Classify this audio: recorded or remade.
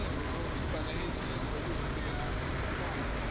recorded